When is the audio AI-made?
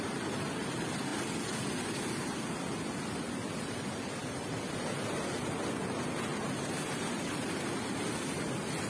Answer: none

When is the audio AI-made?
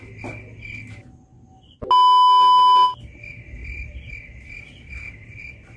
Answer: 3.6-4.1 (vocoder, BigVGAN v2)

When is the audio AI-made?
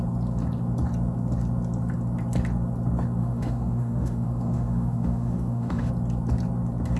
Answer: 3.2-5.9 (autoencoder, DAC-VAE)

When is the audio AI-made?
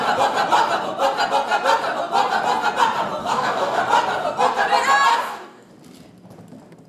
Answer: 3.2-3.8 (codec, DAC); 5.1-5.7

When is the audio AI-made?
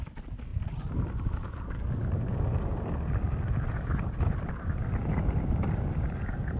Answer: none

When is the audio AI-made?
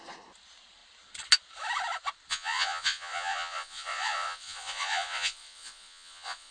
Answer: 2.3-6.5 (vocoder, Vocos)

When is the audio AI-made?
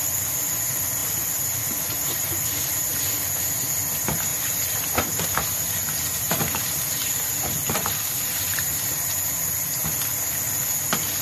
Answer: 4.3-9.3 (vocoder, BigVGAN v2)